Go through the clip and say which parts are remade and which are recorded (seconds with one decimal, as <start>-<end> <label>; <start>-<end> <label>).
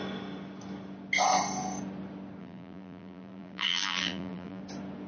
0.0-2.4 recorded; 2.4-4.6 remade; 4.6-5.1 recorded